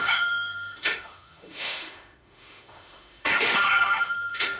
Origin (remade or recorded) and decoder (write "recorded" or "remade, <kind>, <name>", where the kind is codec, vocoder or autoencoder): remade, autoencoder, DAC-VAE